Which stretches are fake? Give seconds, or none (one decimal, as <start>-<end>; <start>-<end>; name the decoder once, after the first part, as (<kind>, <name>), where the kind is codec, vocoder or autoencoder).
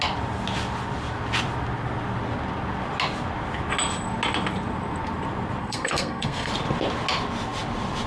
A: 5.6-6.5 (codec, SNAC)